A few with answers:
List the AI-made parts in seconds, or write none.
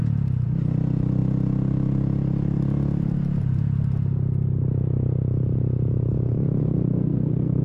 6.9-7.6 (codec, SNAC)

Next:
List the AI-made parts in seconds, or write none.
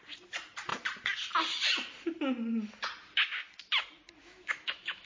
4.2-5.1 (autoencoder, DAC-VAE)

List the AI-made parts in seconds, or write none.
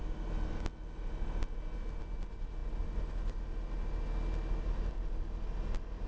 none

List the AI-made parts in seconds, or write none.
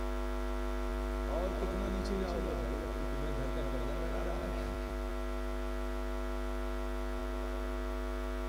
0.9-3.0 (vocoder, BigVGAN v2); 4.4-5.1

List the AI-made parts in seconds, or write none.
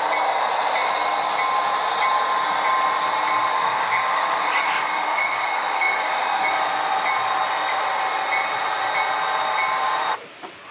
3.5-6.5 (codec, DAC)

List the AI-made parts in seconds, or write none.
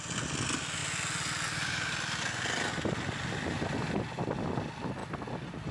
none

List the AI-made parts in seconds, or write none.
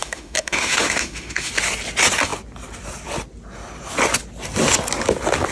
0.0-1.5 (autoencoder, DAC-VAE)